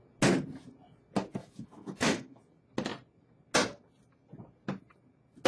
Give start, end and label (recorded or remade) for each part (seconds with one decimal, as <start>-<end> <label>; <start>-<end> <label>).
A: 0.0-1.4 recorded; 1.4-2.4 remade; 2.4-5.5 recorded